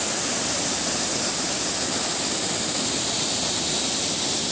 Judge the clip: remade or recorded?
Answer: recorded